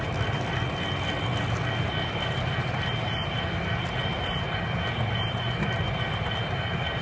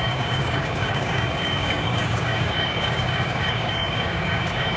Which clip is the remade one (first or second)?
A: second